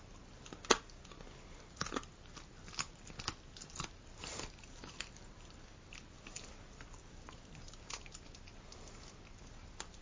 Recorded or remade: recorded